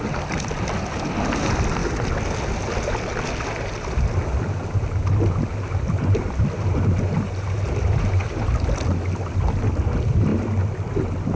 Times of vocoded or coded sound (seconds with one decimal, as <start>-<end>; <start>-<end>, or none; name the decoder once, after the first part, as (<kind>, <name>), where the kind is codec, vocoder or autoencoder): none